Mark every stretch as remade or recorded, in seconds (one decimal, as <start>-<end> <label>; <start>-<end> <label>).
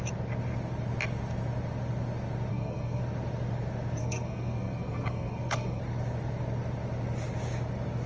0.0-2.5 recorded; 2.5-3.0 remade; 3.0-4.0 recorded; 4.0-5.8 remade; 5.8-8.1 recorded